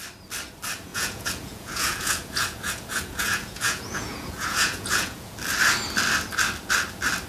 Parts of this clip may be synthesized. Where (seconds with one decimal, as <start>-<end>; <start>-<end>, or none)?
0.9-5.3